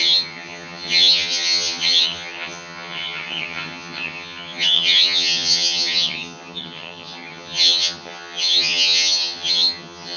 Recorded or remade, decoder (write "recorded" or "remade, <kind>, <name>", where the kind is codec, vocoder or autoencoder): remade, vocoder, HiFi-GAN